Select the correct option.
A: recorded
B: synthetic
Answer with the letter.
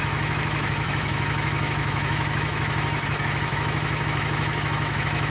B